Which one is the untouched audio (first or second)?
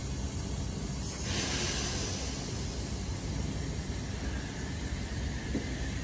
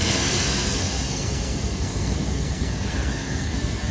first